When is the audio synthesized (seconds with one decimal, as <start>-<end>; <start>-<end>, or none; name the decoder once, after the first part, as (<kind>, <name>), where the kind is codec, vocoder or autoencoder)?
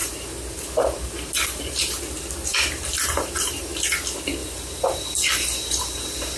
0.0-2.0 (vocoder, BigVGAN v2); 2.5-3.7; 4.4-6.4